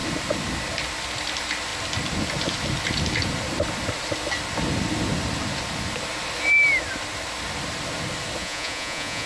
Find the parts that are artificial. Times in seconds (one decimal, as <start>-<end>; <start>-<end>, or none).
8.4-9.3